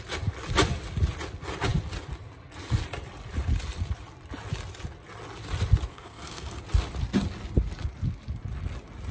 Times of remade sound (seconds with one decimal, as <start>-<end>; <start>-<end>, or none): 5.9-6.6